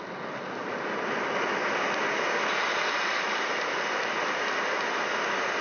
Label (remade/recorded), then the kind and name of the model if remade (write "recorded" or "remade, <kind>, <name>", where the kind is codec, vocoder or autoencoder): recorded